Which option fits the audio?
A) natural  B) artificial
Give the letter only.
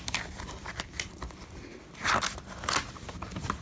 A